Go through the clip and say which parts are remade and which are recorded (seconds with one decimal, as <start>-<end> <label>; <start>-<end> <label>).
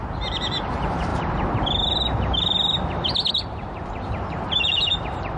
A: 0.0-1.1 remade; 1.1-3.3 recorded; 3.3-5.4 remade